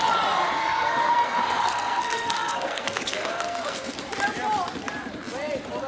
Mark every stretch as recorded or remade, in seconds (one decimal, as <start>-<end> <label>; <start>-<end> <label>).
0.0-0.5 recorded; 0.5-4.0 remade; 4.0-5.9 recorded

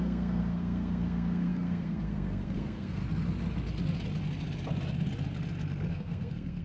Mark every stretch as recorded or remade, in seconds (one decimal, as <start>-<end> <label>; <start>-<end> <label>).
0.0-3.0 remade; 3.0-5.9 recorded; 5.9-6.6 remade

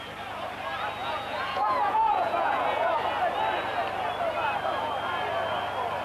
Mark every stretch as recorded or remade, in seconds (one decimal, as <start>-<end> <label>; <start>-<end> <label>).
0.0-1.0 recorded; 1.0-2.9 remade; 2.9-6.0 recorded

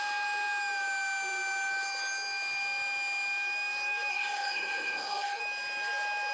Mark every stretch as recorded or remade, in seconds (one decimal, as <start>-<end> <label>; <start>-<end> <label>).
0.0-4.1 recorded; 4.1-5.4 remade; 5.4-6.3 recorded

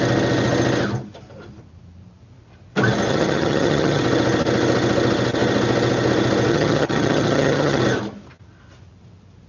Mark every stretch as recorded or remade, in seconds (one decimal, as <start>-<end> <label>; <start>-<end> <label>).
0.0-3.1 recorded; 3.1-4.0 remade; 4.0-6.5 recorded; 6.5-7.8 remade; 7.8-9.5 recorded